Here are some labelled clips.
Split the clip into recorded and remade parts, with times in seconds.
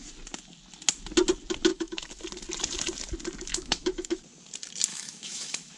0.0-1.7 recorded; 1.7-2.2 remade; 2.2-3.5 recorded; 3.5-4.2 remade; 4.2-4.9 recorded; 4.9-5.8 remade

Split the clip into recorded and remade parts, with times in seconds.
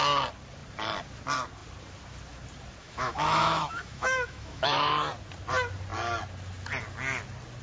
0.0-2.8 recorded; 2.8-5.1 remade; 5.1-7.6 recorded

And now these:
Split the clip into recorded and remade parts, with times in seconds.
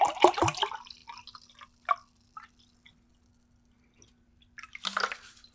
0.0-5.5 recorded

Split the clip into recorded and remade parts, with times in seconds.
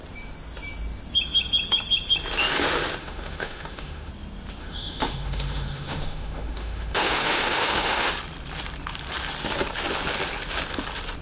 0.0-3.0 recorded; 3.0-4.1 remade; 4.1-4.6 recorded; 4.6-8.1 remade; 8.1-11.2 recorded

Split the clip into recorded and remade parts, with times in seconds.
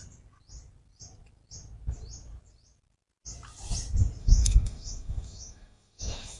0.0-4.2 recorded; 4.2-6.4 remade